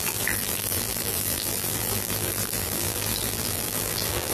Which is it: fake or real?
fake